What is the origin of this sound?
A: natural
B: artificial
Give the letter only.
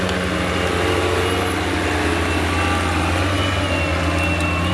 A